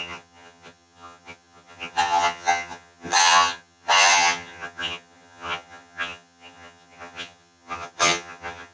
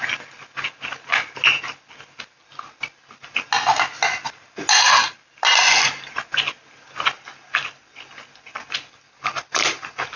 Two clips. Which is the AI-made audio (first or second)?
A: first